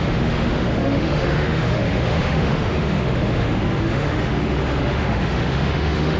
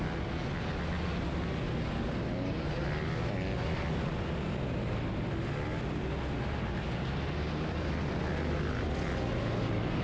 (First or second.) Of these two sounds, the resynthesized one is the first